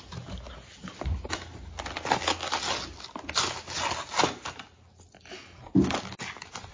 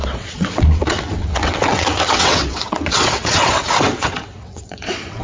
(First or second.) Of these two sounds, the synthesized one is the second